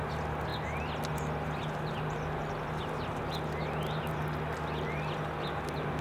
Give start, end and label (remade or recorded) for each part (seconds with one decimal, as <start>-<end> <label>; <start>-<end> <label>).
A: 0.0-6.0 recorded